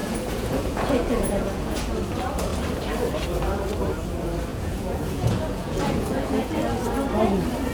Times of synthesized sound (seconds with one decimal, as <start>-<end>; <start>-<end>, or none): 0.0-1.8; 4.5-6.5